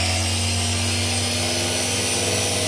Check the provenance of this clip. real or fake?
real